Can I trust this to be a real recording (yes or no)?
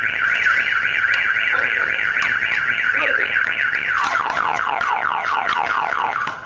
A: no